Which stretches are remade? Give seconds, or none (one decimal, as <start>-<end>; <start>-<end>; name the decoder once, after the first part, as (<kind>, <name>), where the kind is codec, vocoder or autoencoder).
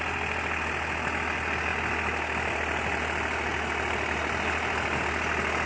none